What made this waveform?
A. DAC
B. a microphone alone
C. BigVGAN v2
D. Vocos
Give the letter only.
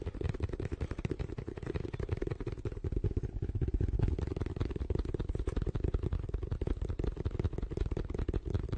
C